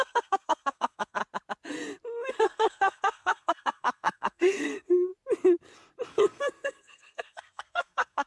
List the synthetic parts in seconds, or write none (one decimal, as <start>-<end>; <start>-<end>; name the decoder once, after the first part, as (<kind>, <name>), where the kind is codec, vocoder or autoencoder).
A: 0.0-1.2 (codec, SNAC); 2.3-5.1; 6.1-8.3